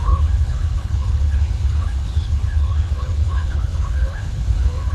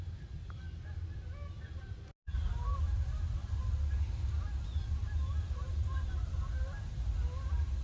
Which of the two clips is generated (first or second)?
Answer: first